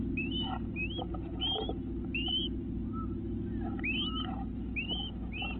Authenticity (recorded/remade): recorded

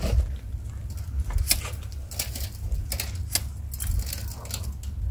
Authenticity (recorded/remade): recorded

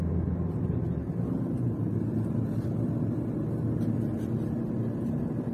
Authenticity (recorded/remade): recorded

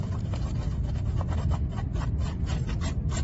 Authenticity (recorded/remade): recorded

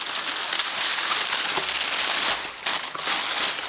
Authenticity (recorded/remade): recorded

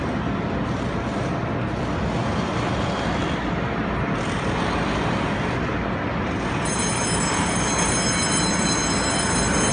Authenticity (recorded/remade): recorded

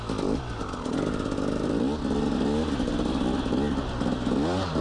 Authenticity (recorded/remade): recorded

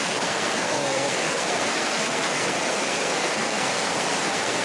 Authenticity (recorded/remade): remade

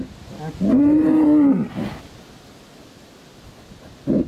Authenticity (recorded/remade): recorded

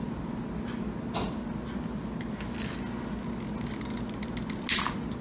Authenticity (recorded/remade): recorded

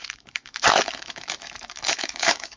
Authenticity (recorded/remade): remade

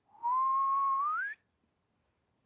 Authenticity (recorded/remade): recorded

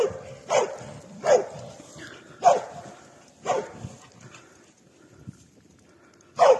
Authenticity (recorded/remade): recorded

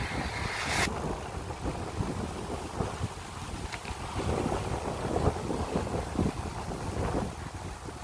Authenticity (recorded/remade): recorded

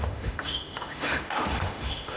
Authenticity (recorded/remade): remade